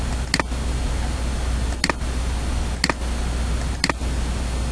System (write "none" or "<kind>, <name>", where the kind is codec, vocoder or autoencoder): none